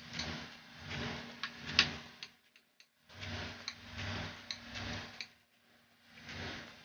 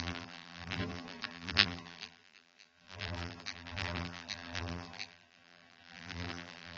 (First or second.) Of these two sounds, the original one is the first